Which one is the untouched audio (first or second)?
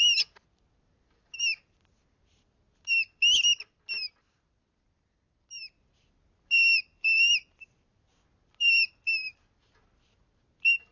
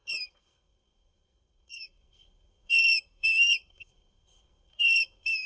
first